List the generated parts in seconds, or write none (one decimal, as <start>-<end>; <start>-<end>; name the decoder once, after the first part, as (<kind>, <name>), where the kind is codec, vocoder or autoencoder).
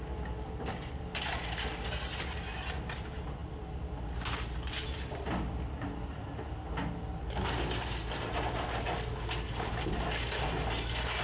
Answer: none